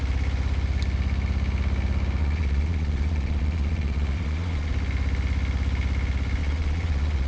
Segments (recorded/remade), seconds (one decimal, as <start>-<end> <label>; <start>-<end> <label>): 0.0-2.2 recorded; 2.2-4.7 remade; 4.7-6.4 recorded; 6.4-7.3 remade